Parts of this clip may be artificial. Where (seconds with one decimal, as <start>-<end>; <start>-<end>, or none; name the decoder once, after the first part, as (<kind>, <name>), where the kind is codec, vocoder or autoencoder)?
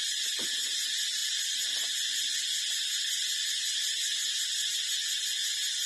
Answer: none